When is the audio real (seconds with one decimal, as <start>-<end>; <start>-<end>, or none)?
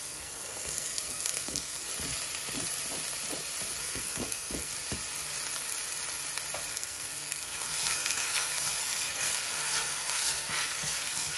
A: 1.9-3.8; 4.7-6.7